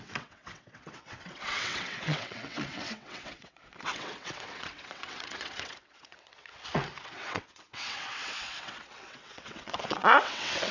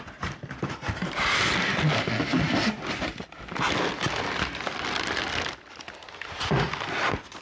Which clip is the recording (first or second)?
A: second